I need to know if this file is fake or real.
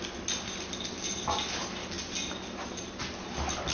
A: real